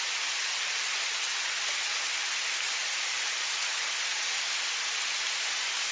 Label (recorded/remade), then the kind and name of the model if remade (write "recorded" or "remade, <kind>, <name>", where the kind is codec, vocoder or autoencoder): recorded